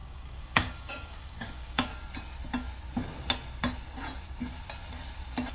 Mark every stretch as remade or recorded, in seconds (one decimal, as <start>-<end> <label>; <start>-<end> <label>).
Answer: 0.0-1.9 remade; 1.9-5.5 recorded